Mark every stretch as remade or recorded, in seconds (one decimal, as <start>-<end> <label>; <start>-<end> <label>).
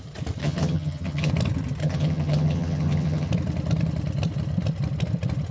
0.0-0.4 recorded; 0.4-1.3 remade; 1.3-1.8 recorded; 1.8-3.3 remade; 3.3-5.5 recorded